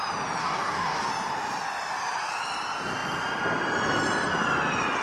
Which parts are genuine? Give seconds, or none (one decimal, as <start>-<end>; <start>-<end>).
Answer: 0.0-0.4; 1.1-5.0